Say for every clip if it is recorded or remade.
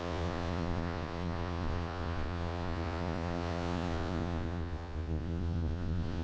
remade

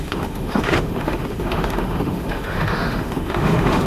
remade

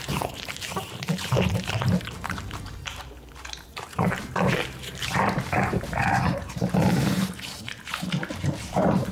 remade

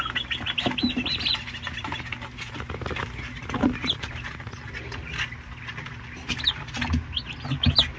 recorded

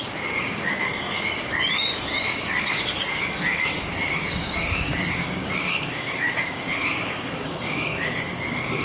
remade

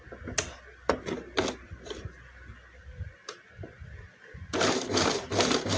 recorded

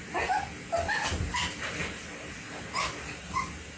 recorded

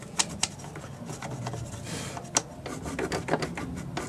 recorded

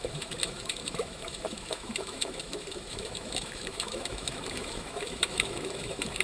remade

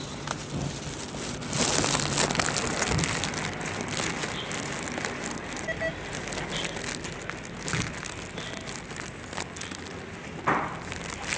recorded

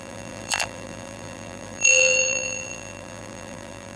remade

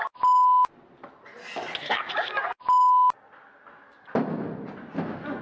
recorded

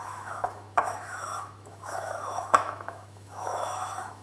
remade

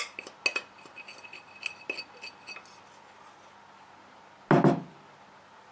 recorded